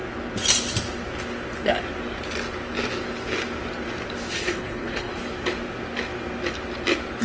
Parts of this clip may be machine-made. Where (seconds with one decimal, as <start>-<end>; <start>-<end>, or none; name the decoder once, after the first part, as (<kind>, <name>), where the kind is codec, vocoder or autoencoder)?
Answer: 4.3-5.1 (codec, HILCodec)